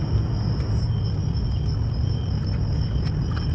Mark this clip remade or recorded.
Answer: recorded